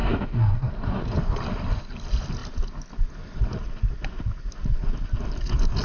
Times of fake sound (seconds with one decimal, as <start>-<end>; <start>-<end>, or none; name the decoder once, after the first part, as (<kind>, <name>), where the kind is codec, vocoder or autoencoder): 0.0-0.7 (codec, SNAC)